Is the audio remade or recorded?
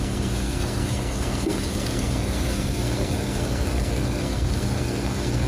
remade